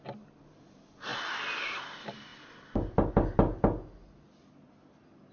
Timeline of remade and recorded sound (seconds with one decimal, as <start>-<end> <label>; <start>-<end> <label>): 0.0-5.3 recorded